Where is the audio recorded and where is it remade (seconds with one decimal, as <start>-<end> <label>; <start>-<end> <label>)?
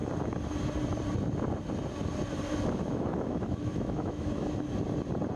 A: 0.0-2.5 recorded; 2.5-4.6 remade; 4.6-5.4 recorded